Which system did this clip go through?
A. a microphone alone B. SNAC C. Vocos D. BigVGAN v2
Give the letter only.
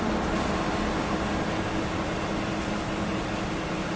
A